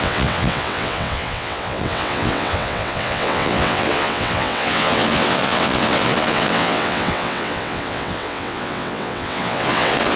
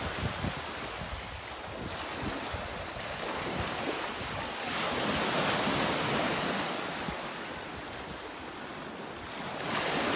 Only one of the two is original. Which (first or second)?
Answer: second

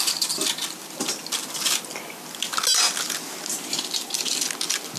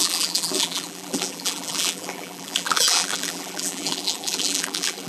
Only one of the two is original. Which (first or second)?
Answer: first